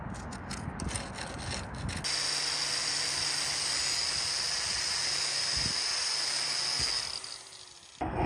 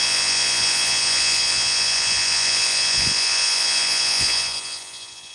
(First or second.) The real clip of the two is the first